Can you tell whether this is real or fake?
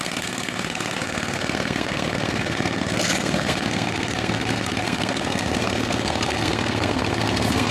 fake